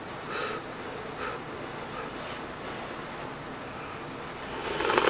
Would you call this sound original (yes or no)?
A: yes